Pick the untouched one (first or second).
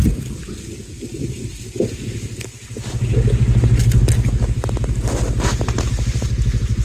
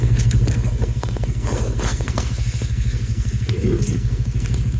first